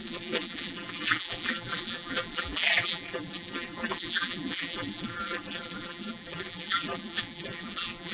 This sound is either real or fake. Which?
fake